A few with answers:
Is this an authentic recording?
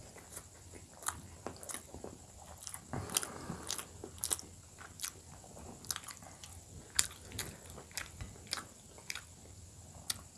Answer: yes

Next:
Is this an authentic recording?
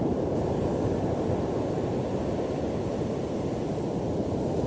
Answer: yes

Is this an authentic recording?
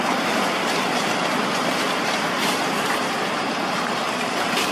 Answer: no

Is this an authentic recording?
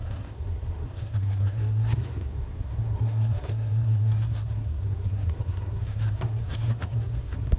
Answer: no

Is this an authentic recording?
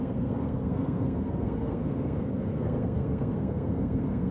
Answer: no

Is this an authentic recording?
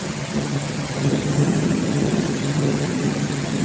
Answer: no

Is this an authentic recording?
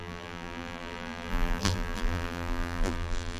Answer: no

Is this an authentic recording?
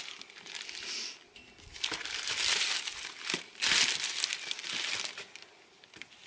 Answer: yes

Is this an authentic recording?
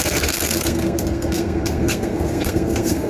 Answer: no